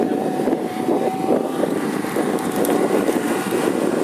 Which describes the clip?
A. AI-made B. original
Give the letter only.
B